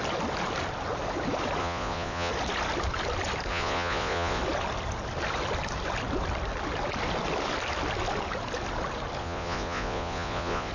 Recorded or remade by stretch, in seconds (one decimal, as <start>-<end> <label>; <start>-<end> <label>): 0.0-1.6 recorded; 1.6-2.3 remade; 2.3-3.5 recorded; 3.5-4.4 remade; 4.4-9.2 recorded; 9.2-10.7 remade